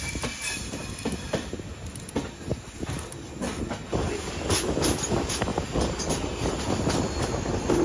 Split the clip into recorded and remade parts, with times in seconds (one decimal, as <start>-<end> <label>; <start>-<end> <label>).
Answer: 0.0-7.8 recorded